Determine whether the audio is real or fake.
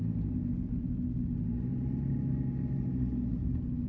real